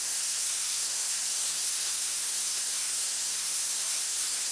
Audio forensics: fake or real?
fake